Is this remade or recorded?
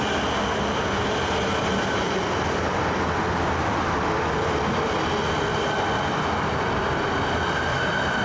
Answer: recorded